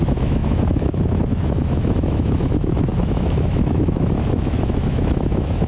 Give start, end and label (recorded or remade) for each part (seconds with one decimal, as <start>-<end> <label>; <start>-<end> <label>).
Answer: 0.0-5.7 remade